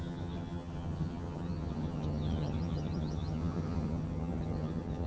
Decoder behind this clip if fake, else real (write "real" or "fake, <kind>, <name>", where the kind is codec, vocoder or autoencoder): fake, vocoder, HiFi-GAN